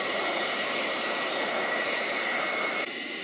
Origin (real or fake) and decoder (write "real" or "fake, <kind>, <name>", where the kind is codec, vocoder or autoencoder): fake, vocoder, BigVGAN v2